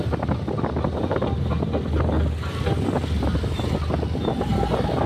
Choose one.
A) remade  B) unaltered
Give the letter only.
B